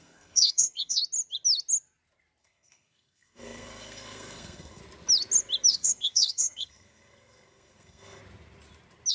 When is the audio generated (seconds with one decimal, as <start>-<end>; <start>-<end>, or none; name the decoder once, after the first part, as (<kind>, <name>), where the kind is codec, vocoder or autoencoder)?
0.0-1.0 (codec, SNAC); 2.4-4.8; 5.7-8.2